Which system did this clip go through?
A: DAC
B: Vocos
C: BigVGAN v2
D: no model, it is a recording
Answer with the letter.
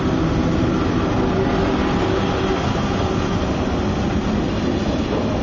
D